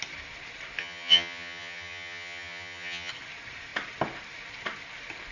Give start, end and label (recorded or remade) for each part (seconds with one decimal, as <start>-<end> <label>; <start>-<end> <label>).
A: 0.0-0.8 recorded; 0.8-3.1 remade; 3.1-5.3 recorded